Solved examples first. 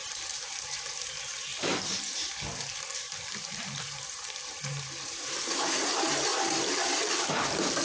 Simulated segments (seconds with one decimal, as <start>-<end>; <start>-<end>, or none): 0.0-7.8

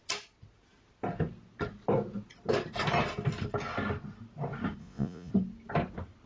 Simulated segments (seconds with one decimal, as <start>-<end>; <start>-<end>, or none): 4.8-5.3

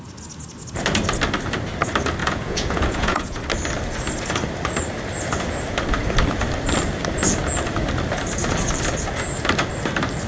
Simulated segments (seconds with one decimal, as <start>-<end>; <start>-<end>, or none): 2.2-3.4

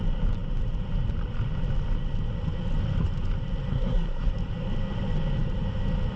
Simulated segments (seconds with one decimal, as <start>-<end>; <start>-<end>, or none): 3.7-4.3